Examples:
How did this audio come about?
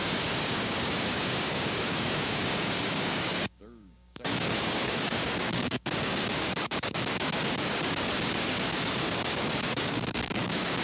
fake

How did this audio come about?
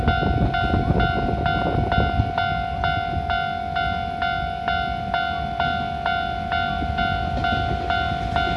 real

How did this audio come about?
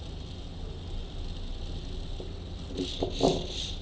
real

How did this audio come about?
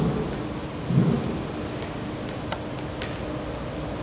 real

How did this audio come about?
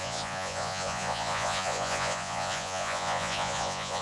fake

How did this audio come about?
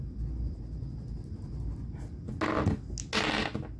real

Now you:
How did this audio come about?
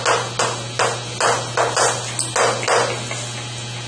real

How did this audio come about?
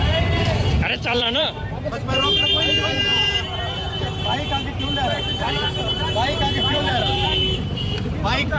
fake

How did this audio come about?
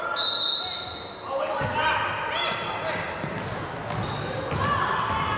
real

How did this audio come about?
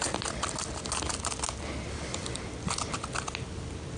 real